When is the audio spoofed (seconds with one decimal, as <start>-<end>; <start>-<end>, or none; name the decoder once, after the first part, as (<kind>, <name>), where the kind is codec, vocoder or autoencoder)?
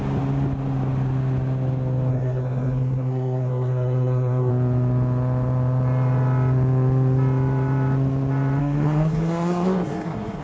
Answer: 2.1-4.5 (codec, SNAC); 8.6-10.4